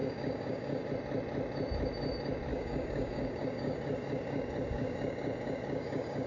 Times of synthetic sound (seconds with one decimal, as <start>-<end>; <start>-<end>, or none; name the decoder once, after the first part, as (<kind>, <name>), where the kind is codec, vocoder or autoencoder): 0.0-0.9 (codec, DAC); 2.5-6.3